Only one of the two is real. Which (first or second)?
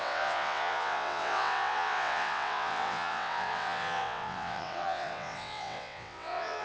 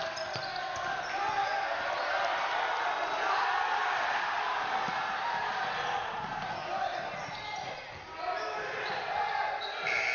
second